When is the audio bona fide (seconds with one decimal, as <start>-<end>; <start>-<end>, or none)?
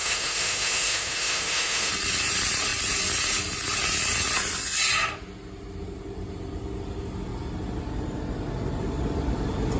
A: 1.9-9.8